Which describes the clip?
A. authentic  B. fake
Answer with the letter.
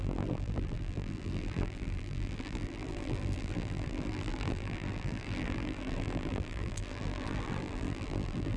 B